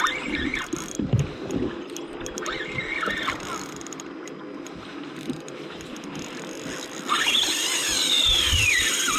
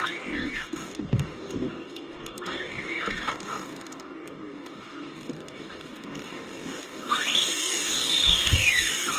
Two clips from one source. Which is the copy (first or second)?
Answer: second